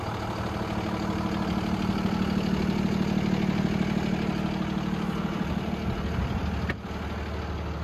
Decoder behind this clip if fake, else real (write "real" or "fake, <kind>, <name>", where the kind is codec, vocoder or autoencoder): real